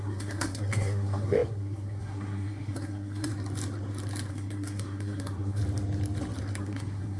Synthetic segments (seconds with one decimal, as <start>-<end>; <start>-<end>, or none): 0.0-3.3; 4.3-5.6; 6.6-7.2